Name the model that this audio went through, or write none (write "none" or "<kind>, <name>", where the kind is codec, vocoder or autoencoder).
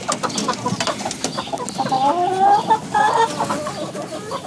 none